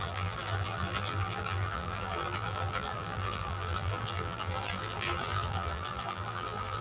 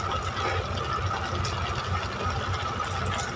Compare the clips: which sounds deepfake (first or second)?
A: first